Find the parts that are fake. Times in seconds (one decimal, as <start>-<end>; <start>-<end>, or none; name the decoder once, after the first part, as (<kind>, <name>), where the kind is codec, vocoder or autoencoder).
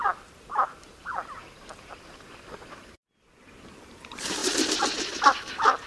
0.0-4.4 (vocoder, BigVGAN v2)